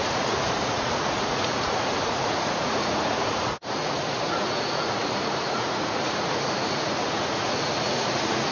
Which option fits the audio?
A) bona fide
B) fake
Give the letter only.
B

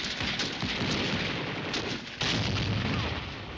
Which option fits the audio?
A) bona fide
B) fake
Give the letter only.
A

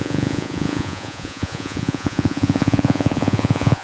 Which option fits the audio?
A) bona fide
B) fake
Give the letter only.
B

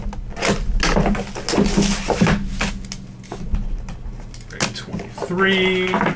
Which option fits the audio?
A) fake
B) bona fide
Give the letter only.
B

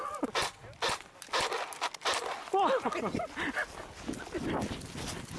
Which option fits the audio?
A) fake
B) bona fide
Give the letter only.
B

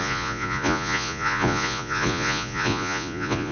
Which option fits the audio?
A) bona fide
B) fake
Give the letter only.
B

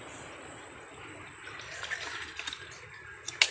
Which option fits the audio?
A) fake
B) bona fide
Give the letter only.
B